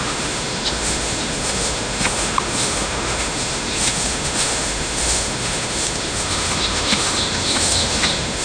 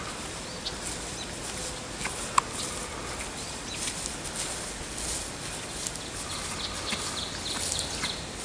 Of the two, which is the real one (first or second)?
second